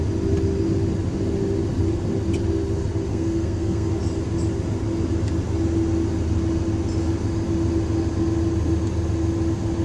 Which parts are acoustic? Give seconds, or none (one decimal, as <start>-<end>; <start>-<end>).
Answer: 0.0-3.1; 3.9-9.8